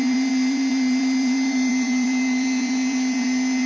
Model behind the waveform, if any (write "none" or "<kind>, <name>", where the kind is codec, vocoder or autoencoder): vocoder, BigVGAN v2